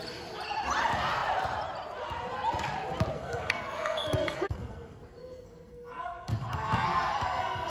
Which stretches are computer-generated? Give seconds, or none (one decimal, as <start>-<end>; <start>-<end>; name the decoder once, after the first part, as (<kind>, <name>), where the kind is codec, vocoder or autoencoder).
3.1-7.7 (codec, SNAC)